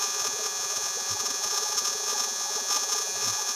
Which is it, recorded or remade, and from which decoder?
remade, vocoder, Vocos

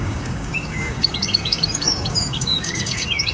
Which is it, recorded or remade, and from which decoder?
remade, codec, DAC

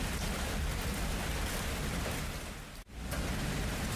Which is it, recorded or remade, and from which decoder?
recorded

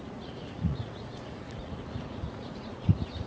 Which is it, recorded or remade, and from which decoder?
remade, vocoder, Vocos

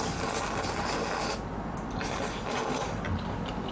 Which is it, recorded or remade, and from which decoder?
recorded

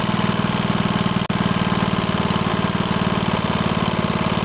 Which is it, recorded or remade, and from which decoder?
recorded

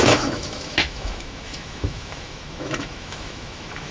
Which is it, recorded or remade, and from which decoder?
remade, autoencoder, DAC-VAE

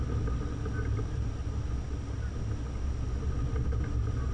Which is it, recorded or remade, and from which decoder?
recorded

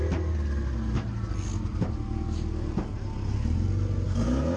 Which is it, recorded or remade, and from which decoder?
recorded